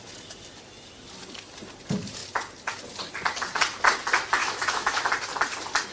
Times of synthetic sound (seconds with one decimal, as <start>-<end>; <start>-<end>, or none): 4.4-5.0